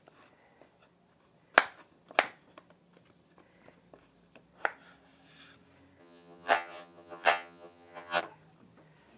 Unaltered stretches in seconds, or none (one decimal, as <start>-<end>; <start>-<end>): 0.0-6.0; 8.2-9.2